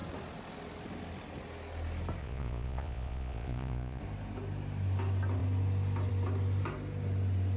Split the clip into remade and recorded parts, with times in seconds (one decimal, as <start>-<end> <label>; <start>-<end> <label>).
0.0-2.2 recorded; 2.2-4.0 remade; 4.0-7.6 recorded